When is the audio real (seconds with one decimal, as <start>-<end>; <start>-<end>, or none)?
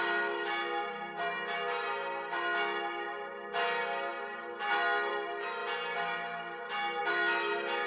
0.0-7.9